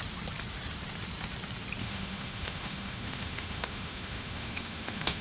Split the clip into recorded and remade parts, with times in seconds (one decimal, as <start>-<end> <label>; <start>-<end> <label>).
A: 0.0-1.8 recorded; 1.8-5.2 remade